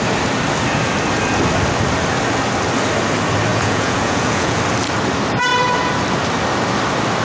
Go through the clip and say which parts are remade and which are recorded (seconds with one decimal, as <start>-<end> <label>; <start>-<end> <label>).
0.0-3.5 recorded; 3.5-4.6 remade; 4.6-7.2 recorded